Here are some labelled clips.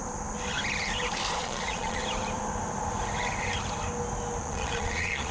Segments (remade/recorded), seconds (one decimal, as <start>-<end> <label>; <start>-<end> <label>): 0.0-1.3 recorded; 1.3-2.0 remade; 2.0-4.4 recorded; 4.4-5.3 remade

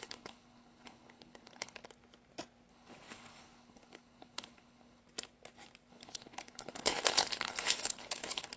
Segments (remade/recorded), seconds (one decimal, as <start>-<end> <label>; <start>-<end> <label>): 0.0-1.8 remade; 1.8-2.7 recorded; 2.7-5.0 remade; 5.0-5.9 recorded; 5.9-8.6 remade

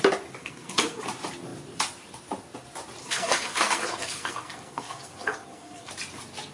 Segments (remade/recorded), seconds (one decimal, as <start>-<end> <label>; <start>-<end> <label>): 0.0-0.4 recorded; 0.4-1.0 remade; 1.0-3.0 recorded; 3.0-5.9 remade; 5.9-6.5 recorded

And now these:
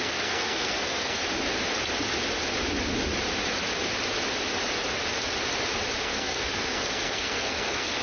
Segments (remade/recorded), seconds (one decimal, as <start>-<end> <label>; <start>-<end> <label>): 0.0-1.2 remade; 1.2-6.0 recorded; 6.0-8.0 remade

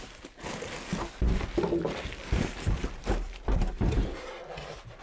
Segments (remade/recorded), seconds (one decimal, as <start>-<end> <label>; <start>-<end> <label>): 0.0-2.8 recorded; 2.8-4.3 remade; 4.3-5.0 recorded

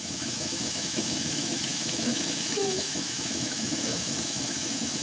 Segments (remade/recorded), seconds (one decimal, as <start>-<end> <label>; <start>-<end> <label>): 0.0-5.0 remade